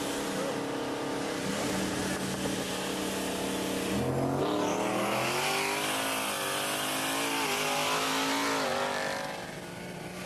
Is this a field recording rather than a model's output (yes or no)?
yes